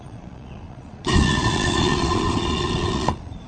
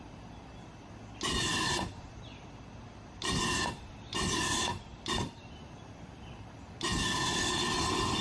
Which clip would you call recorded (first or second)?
second